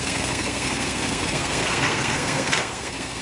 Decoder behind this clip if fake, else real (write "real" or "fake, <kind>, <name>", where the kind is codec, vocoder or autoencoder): fake, codec, SNAC